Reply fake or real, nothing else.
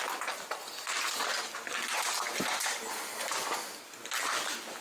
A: real